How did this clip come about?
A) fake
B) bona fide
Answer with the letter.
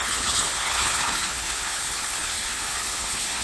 A